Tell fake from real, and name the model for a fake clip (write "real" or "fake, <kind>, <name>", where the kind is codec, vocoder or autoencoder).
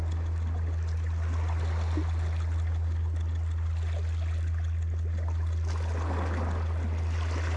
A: real